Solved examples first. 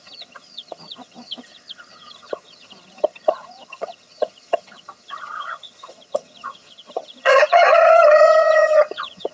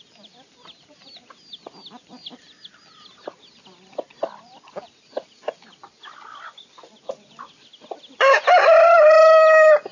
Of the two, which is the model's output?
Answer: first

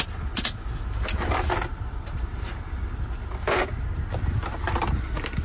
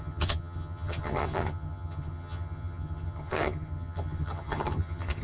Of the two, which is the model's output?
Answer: second